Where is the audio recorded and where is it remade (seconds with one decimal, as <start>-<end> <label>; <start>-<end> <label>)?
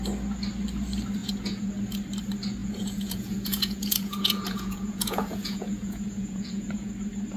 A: 0.0-1.2 recorded; 1.2-1.7 remade; 1.7-2.6 recorded; 2.6-6.9 remade; 6.9-7.4 recorded